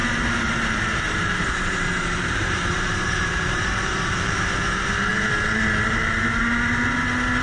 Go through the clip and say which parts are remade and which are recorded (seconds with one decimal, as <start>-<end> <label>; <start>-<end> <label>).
0.0-4.4 remade; 4.4-7.4 recorded